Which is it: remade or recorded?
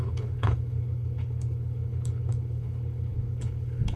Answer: remade